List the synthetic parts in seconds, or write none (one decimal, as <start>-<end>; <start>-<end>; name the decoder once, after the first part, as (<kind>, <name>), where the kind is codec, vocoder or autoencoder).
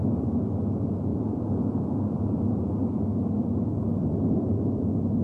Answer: 1.1-1.9 (vocoder, BigVGAN v2); 4.0-4.8